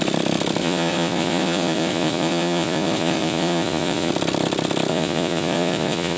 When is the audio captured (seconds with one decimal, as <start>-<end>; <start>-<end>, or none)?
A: 0.0-0.6; 4.1-4.9